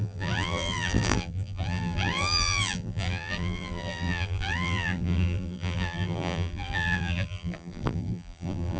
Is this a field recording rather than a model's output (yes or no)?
no